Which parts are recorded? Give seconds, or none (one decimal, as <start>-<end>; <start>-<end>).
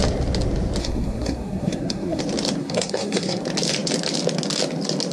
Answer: 0.0-0.8; 2.2-2.6; 3.4-5.1